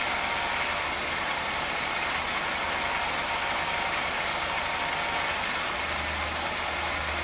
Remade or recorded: recorded